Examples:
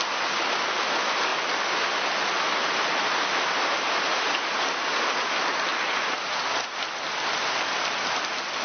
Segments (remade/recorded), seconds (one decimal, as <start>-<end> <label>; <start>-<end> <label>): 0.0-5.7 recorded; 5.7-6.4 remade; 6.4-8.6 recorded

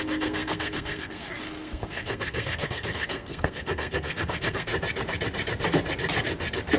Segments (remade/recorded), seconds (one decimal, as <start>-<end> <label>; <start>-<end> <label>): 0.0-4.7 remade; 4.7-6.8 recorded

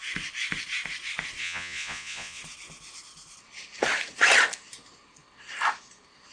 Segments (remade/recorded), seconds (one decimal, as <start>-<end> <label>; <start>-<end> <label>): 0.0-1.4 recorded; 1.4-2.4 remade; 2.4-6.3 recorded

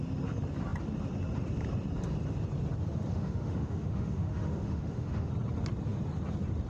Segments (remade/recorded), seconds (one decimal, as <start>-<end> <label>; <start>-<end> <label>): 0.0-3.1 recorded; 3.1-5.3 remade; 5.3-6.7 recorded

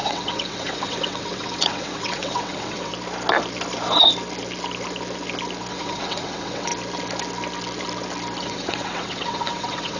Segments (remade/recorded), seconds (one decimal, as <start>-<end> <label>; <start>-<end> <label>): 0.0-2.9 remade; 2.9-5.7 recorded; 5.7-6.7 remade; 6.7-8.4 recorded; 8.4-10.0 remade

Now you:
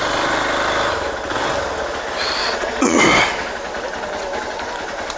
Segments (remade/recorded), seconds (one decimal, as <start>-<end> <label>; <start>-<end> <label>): 0.0-2.4 recorded; 2.4-3.0 remade; 3.0-5.2 recorded